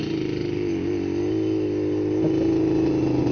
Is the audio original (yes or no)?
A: yes